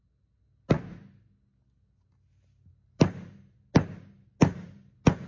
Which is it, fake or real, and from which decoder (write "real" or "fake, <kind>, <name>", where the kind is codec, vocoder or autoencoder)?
real